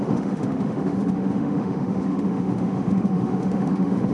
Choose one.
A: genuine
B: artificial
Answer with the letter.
B